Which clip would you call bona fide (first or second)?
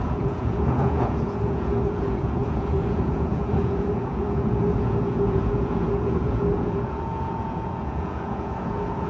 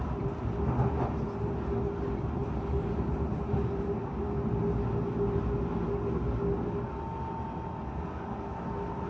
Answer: second